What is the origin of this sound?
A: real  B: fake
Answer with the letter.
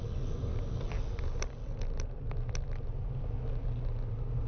A